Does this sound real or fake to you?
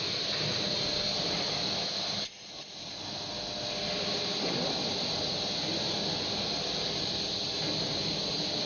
real